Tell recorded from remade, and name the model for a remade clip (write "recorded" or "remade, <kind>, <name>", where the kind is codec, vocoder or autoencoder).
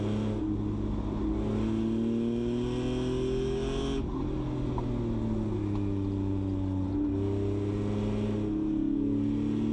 recorded